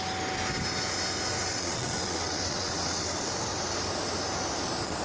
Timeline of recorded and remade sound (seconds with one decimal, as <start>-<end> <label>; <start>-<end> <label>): 0.0-1.5 recorded; 1.5-3.3 remade; 3.3-5.0 recorded